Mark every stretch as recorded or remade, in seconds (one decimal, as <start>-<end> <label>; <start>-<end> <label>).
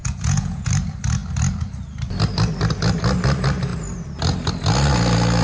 0.0-0.7 remade; 0.7-5.4 recorded